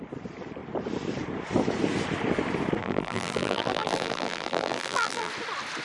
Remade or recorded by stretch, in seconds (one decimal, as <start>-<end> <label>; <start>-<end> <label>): 0.0-2.8 recorded; 2.8-5.3 remade; 5.3-5.8 recorded